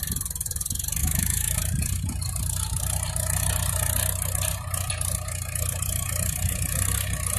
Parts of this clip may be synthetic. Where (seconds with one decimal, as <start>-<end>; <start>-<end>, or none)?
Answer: 1.0-1.6

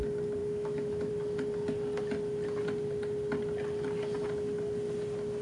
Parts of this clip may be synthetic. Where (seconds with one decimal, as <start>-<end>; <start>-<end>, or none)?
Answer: 0.4-1.1

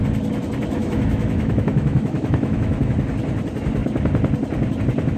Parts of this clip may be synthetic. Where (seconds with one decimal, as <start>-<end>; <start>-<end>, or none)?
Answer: 0.8-2.9

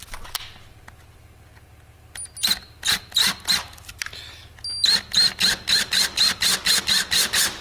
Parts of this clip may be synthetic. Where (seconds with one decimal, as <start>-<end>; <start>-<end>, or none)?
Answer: none

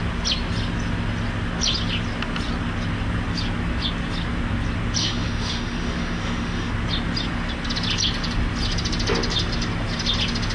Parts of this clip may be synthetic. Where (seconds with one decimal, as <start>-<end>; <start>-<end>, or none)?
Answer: 5.0-6.7

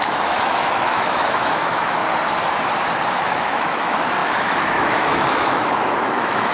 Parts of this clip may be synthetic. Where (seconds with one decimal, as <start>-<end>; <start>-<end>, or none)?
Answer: 0.0-2.0; 3.1-6.5